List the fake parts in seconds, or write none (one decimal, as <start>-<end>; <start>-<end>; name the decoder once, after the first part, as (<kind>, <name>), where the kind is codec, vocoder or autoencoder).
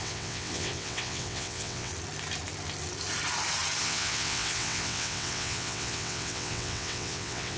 0.0-1.9 (vocoder, WaveNeXt); 3.8-7.6